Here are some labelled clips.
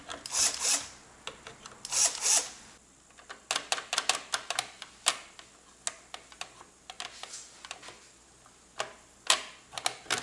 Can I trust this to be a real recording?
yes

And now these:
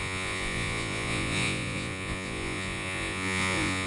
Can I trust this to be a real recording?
no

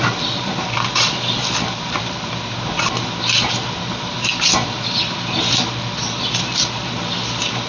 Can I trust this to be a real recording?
no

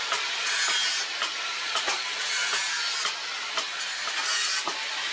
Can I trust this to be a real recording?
yes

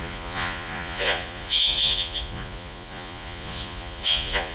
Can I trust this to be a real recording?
no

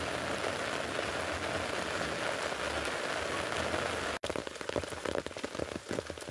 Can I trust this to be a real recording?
yes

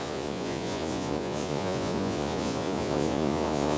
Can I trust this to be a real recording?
no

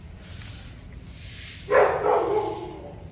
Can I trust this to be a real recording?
yes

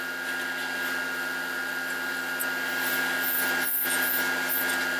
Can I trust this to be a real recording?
yes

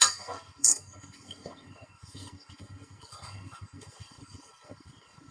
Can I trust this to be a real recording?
no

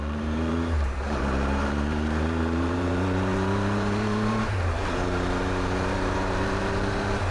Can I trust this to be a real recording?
no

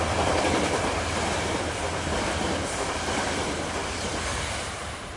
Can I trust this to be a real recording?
no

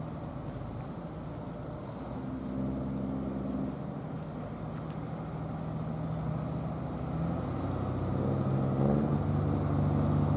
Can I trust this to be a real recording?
yes